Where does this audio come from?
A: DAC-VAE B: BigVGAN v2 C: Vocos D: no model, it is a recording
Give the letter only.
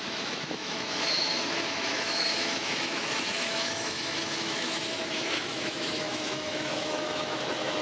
A